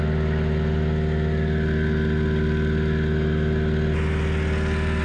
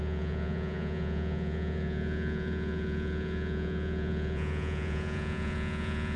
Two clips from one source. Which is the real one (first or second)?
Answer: first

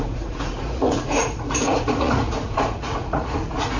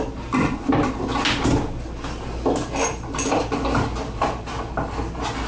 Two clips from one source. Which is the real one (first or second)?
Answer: second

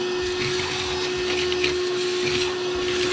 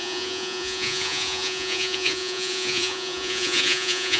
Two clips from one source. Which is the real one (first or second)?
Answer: first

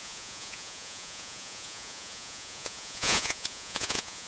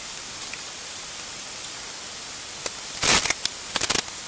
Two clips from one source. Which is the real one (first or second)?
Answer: second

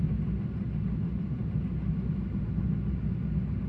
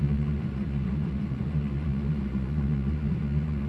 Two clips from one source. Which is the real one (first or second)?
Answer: first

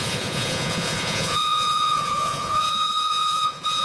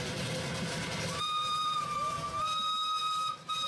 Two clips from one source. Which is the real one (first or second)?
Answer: second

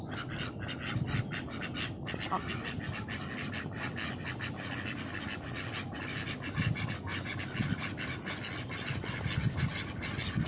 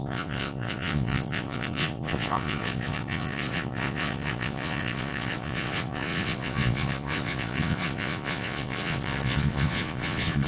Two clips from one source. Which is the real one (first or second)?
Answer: first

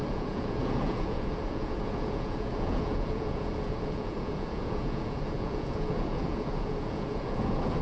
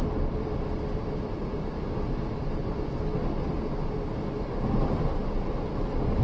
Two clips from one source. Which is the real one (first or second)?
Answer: second